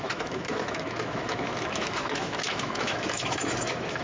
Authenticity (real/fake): fake